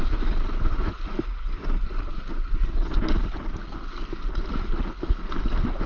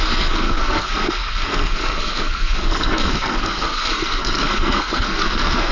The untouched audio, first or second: first